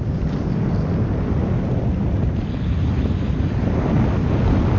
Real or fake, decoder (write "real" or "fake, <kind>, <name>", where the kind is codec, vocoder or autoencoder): real